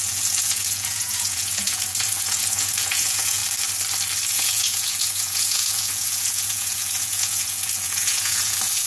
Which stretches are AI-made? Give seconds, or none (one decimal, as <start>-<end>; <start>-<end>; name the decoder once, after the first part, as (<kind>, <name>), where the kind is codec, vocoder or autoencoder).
0.0-3.4 (vocoder, Vocos); 4.3-8.9